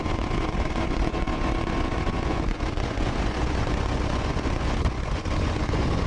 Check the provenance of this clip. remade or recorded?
remade